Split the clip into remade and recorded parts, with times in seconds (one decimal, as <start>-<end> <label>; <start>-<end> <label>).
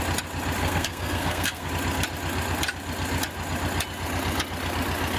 0.0-0.6 recorded; 0.6-1.7 remade; 1.7-5.2 recorded